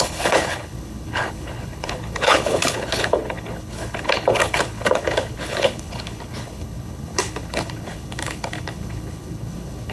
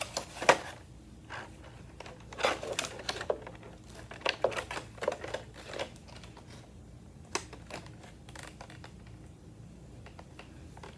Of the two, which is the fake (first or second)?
first